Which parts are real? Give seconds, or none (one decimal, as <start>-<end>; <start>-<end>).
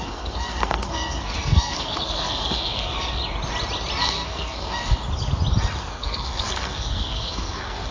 3.2-4.0; 4.9-5.8